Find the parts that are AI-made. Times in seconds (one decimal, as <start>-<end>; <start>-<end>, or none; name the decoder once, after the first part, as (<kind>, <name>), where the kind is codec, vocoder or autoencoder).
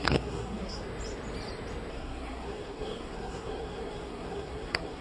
0.0-0.8 (codec, SNAC); 1.9-5.0